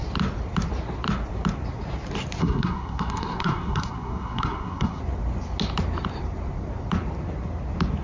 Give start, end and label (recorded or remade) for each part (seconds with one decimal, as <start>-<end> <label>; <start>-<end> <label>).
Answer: 0.0-2.4 recorded; 2.4-5.0 remade; 5.0-8.0 recorded